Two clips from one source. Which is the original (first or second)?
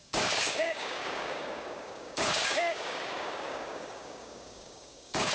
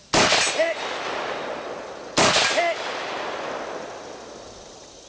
second